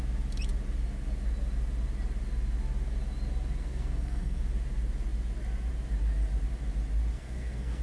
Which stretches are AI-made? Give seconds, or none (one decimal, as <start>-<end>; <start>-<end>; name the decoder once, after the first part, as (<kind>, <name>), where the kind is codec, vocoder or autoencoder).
3.6-4.4 (codec, SNAC); 7.1-7.8